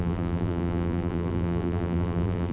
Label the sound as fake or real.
fake